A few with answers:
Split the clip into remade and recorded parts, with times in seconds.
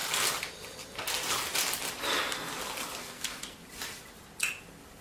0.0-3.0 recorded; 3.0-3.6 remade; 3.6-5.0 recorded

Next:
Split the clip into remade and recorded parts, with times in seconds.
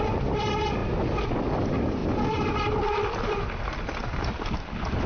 0.0-0.8 remade; 0.8-1.4 recorded; 1.4-5.1 remade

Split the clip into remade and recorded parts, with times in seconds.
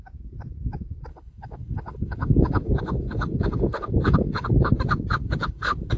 0.0-1.1 recorded; 1.1-4.7 remade; 4.7-5.2 recorded; 5.2-6.0 remade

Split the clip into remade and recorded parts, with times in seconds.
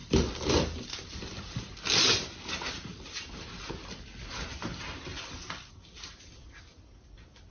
0.0-1.6 remade; 1.6-5.1 recorded; 5.1-5.7 remade; 5.7-7.5 recorded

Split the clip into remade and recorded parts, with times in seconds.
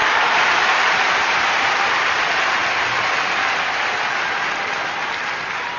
0.0-2.1 remade; 2.1-5.8 recorded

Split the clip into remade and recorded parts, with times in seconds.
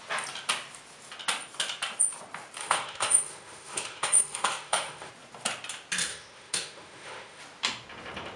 0.0-2.6 recorded; 2.6-5.1 remade; 5.1-6.1 recorded; 6.1-7.4 remade; 7.4-8.4 recorded